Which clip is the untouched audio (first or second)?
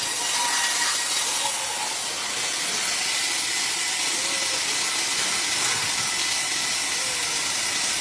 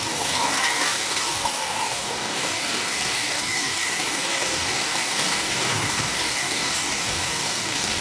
first